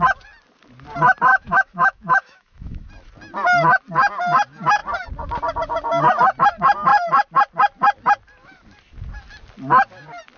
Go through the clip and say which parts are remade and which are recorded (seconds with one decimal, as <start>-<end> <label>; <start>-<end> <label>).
0.0-1.3 recorded; 1.3-2.9 remade; 2.9-10.4 recorded